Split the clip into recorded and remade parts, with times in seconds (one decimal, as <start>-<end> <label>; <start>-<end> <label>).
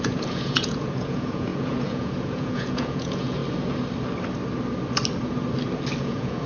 0.0-3.4 remade; 3.4-6.0 recorded; 6.0-6.5 remade